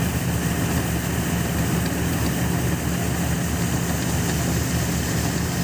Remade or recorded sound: recorded